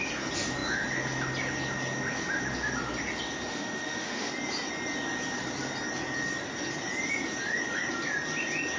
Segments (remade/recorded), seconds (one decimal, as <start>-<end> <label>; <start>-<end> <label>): 0.0-3.5 recorded; 3.5-4.3 remade; 4.3-8.8 recorded

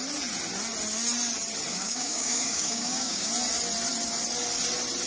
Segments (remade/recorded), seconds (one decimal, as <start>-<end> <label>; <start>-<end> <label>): 0.0-1.7 recorded; 1.7-3.3 remade; 3.3-5.1 recorded

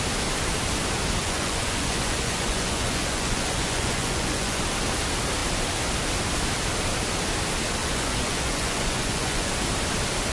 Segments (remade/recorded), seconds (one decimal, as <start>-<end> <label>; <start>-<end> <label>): 0.0-1.2 recorded; 1.2-4.6 remade; 4.6-7.8 recorded; 7.8-9.5 remade; 9.5-10.3 recorded